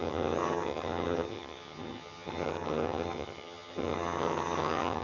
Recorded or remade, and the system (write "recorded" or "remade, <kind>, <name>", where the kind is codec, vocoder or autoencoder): remade, vocoder, HiFi-GAN